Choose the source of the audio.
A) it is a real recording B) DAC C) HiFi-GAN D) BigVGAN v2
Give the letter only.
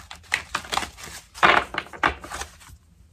A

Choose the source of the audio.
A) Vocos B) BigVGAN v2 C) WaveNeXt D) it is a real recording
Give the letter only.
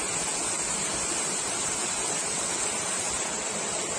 D